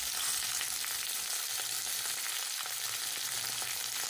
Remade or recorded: recorded